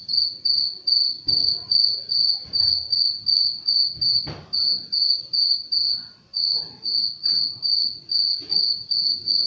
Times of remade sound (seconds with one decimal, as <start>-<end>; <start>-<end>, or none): 1.4-3.8; 6.3-9.5